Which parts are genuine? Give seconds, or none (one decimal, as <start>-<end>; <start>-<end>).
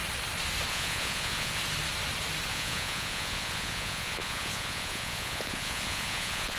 0.0-0.7; 1.6-2.5